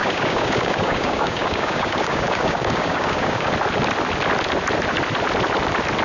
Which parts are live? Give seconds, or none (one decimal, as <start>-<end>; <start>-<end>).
3.5-6.0